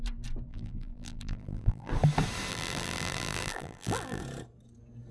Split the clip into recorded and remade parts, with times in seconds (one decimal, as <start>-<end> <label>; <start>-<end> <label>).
0.0-0.5 recorded; 0.5-1.9 remade; 1.9-2.5 recorded; 2.5-4.2 remade; 4.2-5.1 recorded